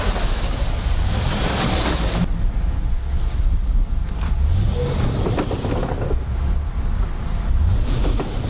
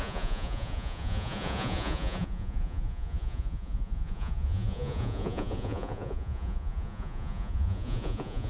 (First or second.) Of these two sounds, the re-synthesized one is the second